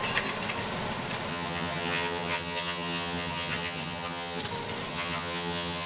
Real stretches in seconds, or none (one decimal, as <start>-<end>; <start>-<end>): 0.0-1.3; 4.4-4.9

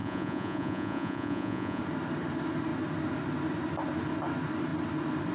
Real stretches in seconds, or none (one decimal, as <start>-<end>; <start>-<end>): 1.8-5.3

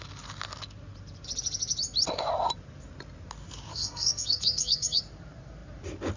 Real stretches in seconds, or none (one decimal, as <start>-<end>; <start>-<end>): 0.0-3.7; 5.0-6.2

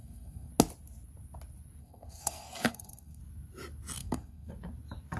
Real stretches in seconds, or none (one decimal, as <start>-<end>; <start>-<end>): 0.5-1.8; 3.2-4.0; 4.5-5.2